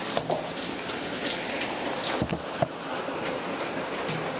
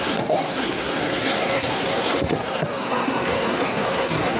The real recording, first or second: first